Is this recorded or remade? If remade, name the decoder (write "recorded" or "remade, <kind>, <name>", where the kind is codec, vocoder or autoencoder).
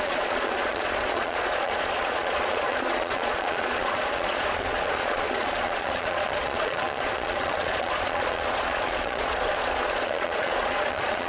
remade, vocoder, Vocos